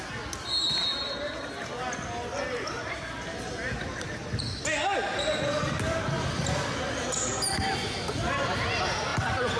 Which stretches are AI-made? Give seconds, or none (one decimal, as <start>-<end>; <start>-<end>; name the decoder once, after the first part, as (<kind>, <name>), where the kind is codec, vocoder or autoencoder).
none